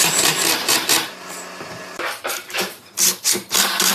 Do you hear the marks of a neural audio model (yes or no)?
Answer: yes